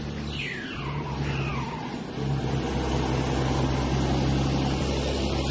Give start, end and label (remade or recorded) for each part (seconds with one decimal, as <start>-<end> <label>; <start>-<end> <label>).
0.0-5.5 recorded